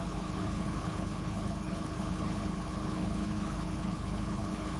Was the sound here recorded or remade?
remade